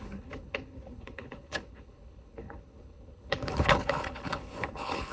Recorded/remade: remade